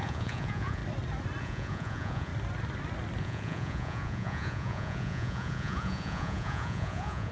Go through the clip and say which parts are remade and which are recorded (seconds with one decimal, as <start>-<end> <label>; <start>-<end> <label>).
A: 0.0-0.8 remade; 0.8-1.4 recorded; 1.4-2.3 remade; 2.3-3.2 recorded; 3.2-7.3 remade